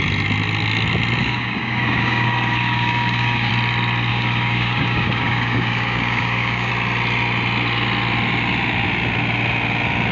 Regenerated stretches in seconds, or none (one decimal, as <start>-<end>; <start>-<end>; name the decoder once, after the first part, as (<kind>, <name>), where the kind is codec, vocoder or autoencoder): 1.2-3.5 (codec, DAC); 4.1-6.7